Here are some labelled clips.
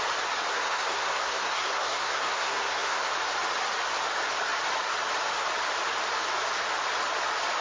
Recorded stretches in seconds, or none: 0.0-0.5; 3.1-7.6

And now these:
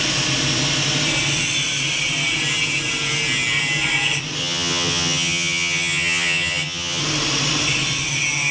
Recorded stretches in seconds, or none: 0.0-4.4; 7.0-8.5

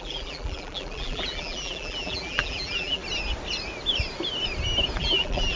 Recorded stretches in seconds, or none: 3.0-5.0

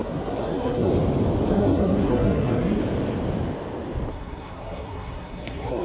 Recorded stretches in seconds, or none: 0.9-1.5; 2.8-4.1